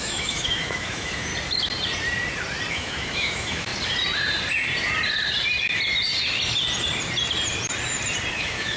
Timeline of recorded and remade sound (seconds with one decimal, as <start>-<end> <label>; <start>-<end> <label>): 0.0-1.3 remade; 1.3-2.7 recorded; 2.7-3.7 remade; 3.7-8.3 recorded; 8.3-8.8 remade